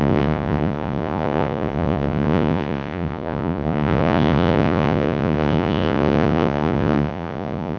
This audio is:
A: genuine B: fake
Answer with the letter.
B